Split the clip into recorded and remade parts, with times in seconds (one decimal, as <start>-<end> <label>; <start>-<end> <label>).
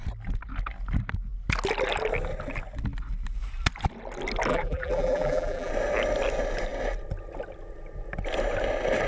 0.0-4.5 recorded; 4.5-5.7 remade; 5.7-9.1 recorded